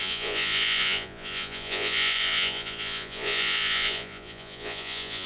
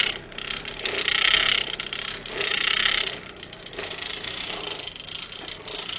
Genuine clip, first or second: second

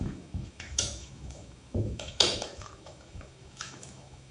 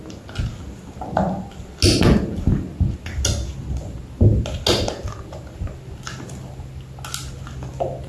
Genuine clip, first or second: second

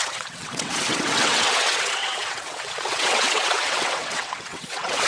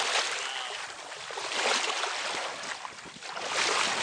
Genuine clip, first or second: second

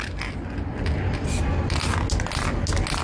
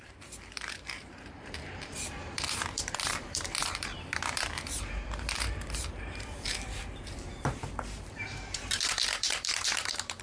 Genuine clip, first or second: first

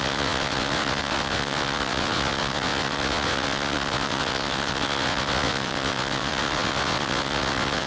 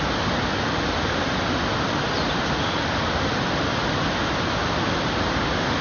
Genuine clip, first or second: second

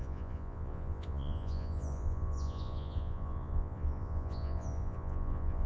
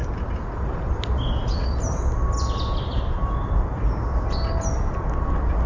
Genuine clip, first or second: second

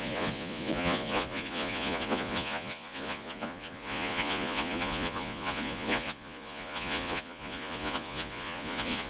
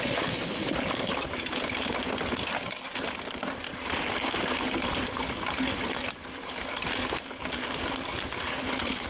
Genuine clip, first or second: second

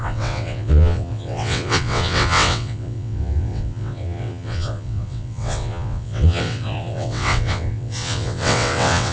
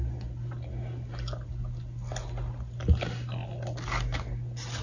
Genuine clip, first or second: second